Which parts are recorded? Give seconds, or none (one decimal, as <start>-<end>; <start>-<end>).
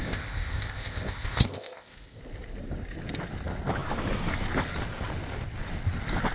2.2-6.3